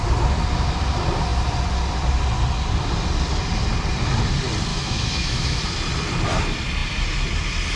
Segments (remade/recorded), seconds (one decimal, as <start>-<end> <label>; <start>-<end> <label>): 0.0-4.7 recorded; 4.7-5.6 remade; 5.6-7.8 recorded